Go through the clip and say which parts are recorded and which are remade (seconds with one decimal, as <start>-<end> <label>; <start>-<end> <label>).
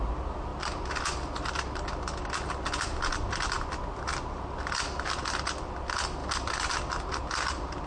0.0-7.9 recorded